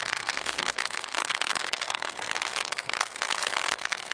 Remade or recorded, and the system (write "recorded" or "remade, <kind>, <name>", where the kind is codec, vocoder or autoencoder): remade, codec, SNAC